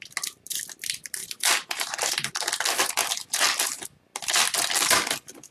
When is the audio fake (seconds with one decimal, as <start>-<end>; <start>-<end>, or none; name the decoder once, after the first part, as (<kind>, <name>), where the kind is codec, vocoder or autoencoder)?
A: 1.2-2.3 (vocoder, BigVGAN v2)